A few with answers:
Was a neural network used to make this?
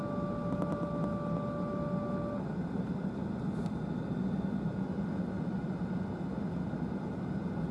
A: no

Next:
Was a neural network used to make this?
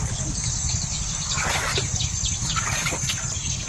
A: yes